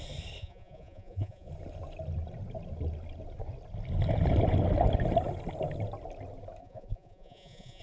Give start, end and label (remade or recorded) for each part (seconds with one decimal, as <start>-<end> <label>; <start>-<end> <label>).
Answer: 0.0-0.4 recorded; 0.4-1.5 remade; 1.5-6.6 recorded; 6.6-7.8 remade